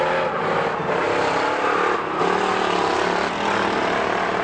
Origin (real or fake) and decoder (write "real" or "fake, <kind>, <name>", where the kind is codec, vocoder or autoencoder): real